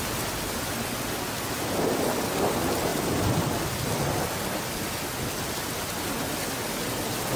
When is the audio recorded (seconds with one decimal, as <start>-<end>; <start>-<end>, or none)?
0.0-2.9; 4.6-7.4